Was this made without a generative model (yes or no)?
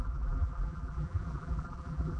no